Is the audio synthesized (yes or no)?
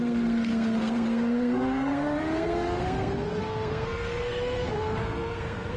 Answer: yes